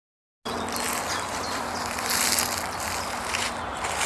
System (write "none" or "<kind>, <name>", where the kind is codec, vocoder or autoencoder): none